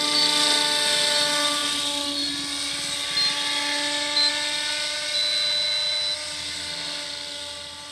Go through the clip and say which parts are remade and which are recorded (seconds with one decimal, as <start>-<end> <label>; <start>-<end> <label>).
0.0-7.9 recorded